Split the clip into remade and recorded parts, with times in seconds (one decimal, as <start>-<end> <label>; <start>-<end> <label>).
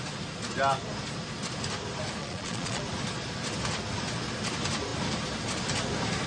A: 0.0-2.2 recorded; 2.2-2.8 remade; 2.8-6.3 recorded